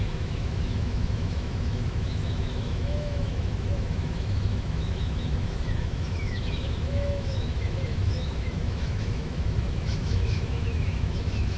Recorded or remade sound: remade